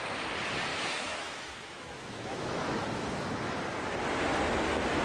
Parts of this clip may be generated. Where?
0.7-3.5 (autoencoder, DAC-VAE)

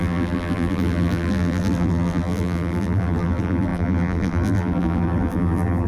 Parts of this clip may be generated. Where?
0.0-5.9 (vocoder, BigVGAN v2)